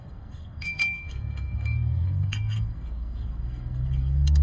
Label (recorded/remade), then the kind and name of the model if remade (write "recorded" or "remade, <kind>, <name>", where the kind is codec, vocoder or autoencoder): remade, codec, SNAC